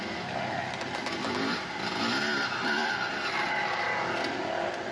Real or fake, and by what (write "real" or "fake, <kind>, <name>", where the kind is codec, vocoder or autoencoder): real